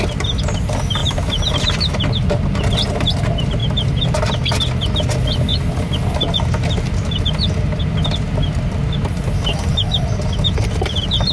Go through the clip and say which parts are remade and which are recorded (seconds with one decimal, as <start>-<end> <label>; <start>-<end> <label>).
0.0-3.6 recorded; 3.6-4.2 remade; 4.2-11.3 recorded